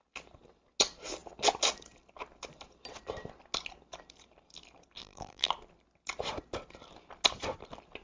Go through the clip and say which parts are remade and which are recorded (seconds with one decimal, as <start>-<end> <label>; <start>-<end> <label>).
0.0-5.0 recorded; 5.0-5.5 remade; 5.5-8.0 recorded